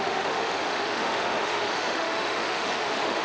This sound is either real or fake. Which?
fake